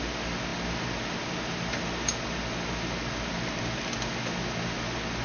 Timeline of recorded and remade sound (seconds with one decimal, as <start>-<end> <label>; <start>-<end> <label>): 0.0-5.2 recorded